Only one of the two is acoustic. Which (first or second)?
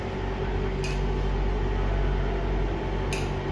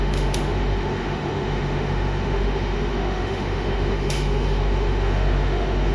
first